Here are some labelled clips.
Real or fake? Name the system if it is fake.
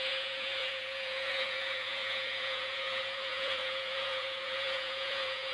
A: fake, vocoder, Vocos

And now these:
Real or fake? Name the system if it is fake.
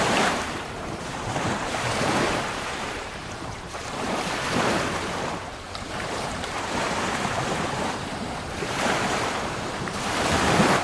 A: fake, vocoder, BigVGAN v2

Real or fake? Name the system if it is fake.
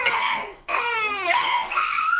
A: fake, codec, SNAC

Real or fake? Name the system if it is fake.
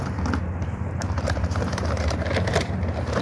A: fake, vocoder, BigVGAN v2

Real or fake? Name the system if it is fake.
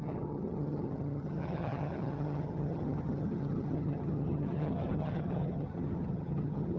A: fake, vocoder, HiFi-GAN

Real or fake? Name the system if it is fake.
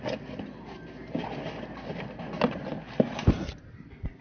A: real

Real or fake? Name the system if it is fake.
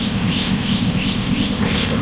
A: fake, codec, ZipCodec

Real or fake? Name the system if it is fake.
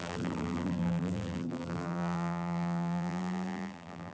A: fake, vocoder, BigVGAN v2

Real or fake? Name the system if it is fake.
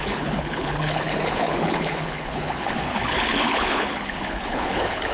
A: fake, codec, HILCodec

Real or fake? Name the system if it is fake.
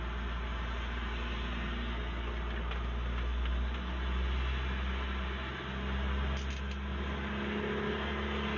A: real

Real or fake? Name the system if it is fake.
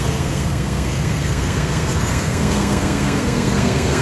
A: fake, codec, SNAC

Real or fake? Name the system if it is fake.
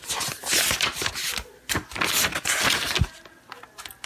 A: real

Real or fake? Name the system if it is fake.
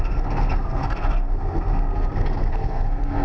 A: fake, codec, SNAC